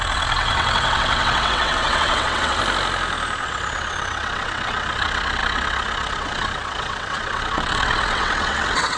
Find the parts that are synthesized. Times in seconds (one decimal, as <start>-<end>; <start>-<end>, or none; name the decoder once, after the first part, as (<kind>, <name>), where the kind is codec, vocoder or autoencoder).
0.0-2.6 (vocoder, WaveNeXt); 3.4-9.0